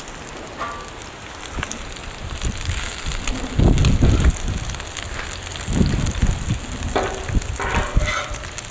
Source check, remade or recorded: recorded